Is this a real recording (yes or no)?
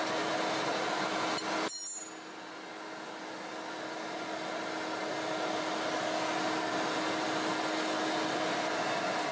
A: yes